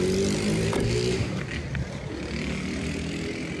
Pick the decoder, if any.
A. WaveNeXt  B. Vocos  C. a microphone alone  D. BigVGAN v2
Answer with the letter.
C